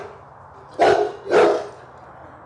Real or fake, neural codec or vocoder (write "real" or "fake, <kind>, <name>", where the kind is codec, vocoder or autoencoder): real